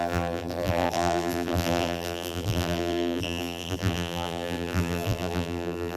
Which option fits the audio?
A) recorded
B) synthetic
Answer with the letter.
B